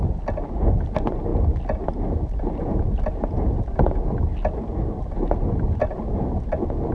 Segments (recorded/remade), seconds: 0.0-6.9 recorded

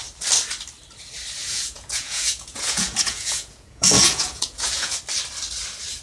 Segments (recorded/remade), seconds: 0.0-1.4 recorded; 1.4-5.0 remade; 5.0-6.0 recorded